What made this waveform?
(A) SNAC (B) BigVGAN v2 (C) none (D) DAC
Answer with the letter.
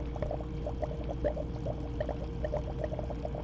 C